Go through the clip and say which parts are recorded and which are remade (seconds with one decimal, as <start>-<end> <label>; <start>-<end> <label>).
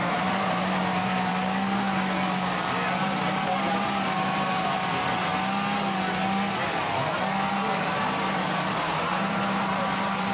0.0-1.3 remade; 1.3-3.0 recorded; 3.0-5.3 remade; 5.3-7.5 recorded; 7.5-10.3 remade